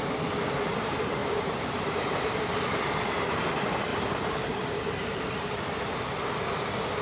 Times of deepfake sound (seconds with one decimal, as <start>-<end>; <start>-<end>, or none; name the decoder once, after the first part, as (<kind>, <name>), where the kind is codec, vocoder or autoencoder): 1.2-2.8 (vocoder, BigVGAN v2); 3.9-5.6